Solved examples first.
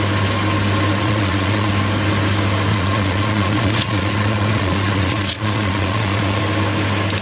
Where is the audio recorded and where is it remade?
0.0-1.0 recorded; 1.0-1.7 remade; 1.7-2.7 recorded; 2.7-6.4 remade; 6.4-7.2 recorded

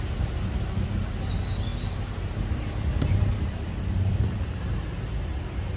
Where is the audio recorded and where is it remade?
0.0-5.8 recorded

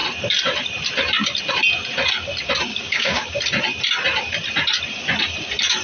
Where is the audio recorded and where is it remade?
0.0-2.7 recorded; 2.7-3.4 remade; 3.4-5.8 recorded

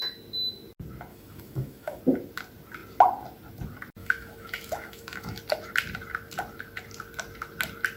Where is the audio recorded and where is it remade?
0.0-1.1 recorded; 1.1-2.0 remade; 2.0-4.0 recorded; 4.0-5.4 remade; 5.4-8.0 recorded

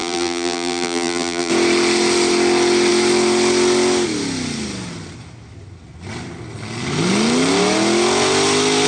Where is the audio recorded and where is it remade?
0.0-1.5 remade; 1.5-8.9 recorded